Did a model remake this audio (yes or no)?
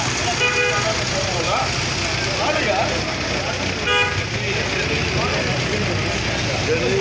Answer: no